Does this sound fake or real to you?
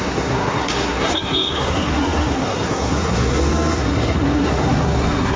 fake